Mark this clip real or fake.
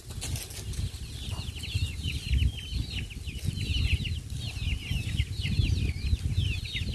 real